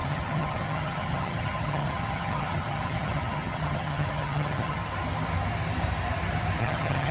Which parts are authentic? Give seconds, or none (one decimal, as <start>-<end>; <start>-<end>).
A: 4.8-6.6